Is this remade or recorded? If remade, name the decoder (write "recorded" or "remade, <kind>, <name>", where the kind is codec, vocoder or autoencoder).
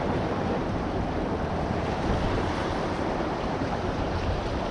remade, vocoder, BigVGAN v2